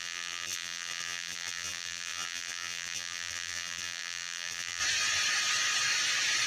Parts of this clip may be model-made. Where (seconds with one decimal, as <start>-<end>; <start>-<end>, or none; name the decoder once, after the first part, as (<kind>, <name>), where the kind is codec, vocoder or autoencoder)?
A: 0.0-4.8 (vocoder, BigVGAN v2)